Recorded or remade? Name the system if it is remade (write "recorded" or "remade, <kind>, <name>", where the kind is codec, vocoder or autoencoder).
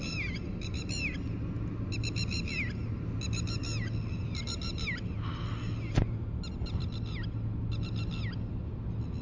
recorded